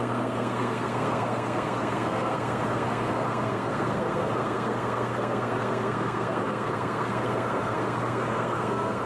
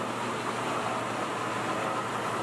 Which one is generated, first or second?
first